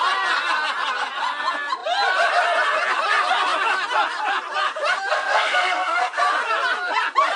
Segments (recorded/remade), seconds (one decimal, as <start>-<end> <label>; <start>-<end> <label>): 0.0-5.1 recorded; 5.1-6.2 remade; 6.2-7.4 recorded